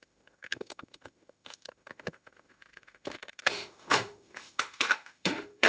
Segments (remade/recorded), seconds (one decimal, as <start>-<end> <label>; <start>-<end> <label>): 0.0-5.7 remade

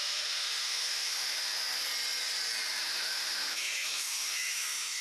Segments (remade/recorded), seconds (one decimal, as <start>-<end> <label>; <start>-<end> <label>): 0.0-1.6 remade; 1.6-2.8 recorded; 2.8-5.0 remade

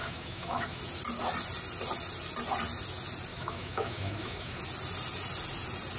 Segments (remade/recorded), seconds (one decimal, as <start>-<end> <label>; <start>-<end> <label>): 0.0-0.8 remade; 0.8-3.3 recorded; 3.3-4.6 remade; 4.6-6.0 recorded

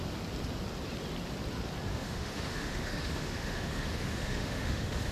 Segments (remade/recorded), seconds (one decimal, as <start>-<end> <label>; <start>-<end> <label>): 0.0-1.9 recorded; 1.9-5.1 remade

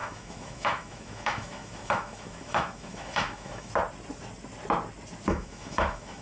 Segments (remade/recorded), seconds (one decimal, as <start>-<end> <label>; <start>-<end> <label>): 0.0-3.7 remade; 3.7-5.3 recorded; 5.3-6.2 remade

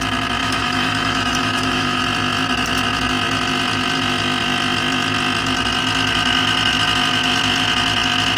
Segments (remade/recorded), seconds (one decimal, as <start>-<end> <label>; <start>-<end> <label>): 0.0-0.4 recorded; 0.4-2.0 remade; 2.0-8.4 recorded

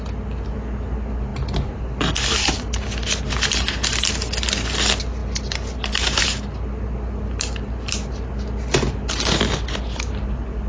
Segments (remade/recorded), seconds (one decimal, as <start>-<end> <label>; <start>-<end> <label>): 0.0-10.7 recorded

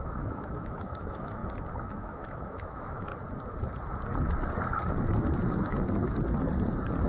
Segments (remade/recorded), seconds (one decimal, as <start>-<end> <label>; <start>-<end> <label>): 0.0-1.4 remade; 1.4-2.0 recorded; 2.0-3.1 remade; 3.1-7.1 recorded